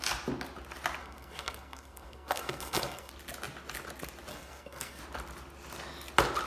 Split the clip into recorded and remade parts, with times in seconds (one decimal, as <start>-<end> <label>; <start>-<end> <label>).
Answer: 0.0-1.0 recorded; 1.0-3.1 remade; 3.1-4.3 recorded; 4.3-5.0 remade; 5.0-6.5 recorded